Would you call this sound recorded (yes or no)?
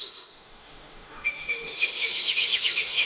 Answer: no